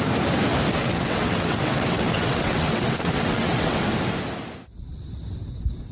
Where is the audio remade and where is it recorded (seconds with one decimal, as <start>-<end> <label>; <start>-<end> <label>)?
0.0-0.8 recorded; 0.8-3.8 remade; 3.8-5.9 recorded